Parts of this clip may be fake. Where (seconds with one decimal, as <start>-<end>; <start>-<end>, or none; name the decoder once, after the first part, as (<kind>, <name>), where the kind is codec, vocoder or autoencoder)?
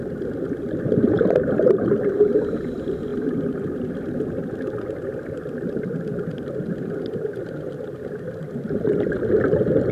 0.0-9.9 (vocoder, BigVGAN v2)